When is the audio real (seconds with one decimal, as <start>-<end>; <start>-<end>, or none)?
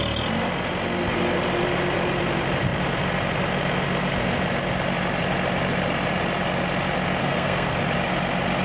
0.0-7.2; 7.8-8.6